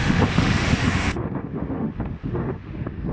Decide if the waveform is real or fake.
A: fake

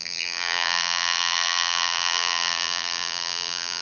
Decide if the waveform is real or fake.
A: fake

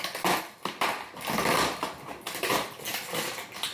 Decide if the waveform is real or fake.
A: real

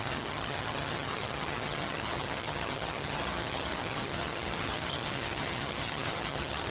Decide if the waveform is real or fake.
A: fake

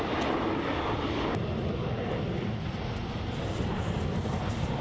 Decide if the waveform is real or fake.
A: real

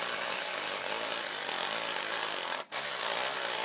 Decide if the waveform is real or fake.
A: real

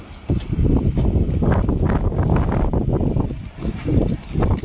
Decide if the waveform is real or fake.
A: real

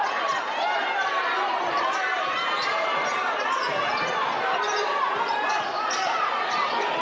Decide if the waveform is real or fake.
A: fake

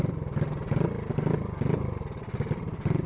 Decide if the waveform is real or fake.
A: real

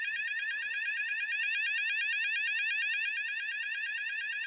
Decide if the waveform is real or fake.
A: real